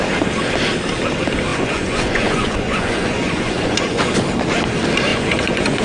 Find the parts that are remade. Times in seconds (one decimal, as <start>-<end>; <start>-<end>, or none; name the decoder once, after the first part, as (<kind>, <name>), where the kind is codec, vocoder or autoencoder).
1.5-4.0 (vocoder, Vocos); 5.1-5.8